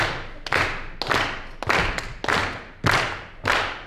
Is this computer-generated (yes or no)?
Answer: no